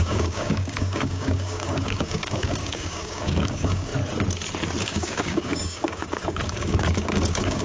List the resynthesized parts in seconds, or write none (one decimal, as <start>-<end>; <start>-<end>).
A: 0.0-3.9; 4.8-7.6